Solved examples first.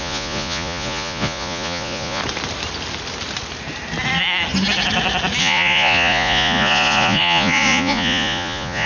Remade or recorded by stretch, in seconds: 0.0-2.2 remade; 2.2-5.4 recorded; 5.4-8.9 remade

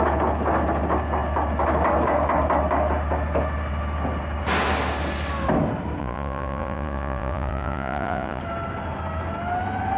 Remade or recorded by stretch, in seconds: 0.0-6.0 recorded; 6.0-8.4 remade; 8.4-10.0 recorded